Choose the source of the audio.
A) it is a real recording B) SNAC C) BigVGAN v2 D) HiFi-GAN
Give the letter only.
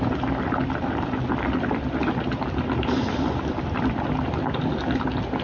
A